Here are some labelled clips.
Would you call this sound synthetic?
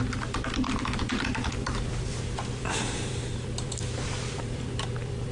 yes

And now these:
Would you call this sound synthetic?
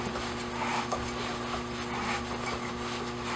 no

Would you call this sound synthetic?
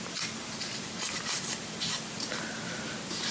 yes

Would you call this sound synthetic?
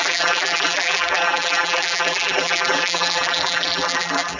yes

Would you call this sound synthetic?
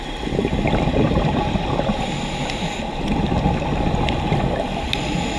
no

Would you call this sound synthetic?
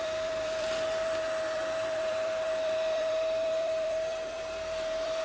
yes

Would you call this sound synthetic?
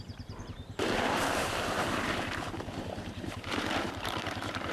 yes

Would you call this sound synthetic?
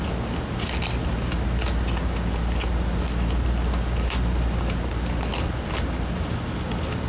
no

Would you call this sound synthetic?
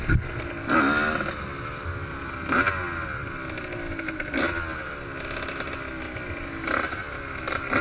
no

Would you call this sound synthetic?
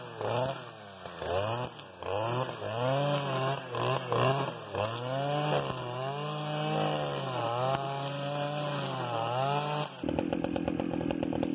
no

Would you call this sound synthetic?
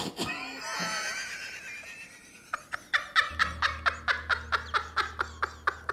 no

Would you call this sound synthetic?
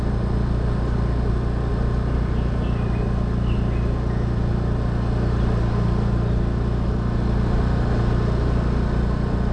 no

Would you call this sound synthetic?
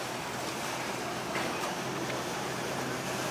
yes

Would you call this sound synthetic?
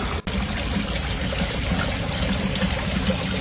no